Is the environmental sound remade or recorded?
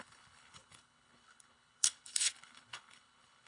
remade